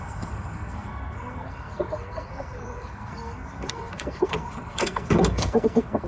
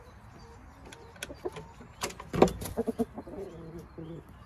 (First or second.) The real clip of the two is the second